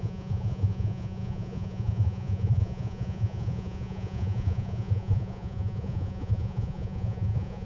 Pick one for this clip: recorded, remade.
remade